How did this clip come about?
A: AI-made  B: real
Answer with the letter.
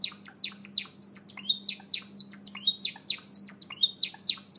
B